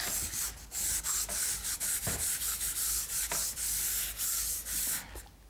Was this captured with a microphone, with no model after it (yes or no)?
yes